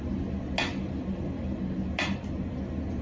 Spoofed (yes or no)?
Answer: no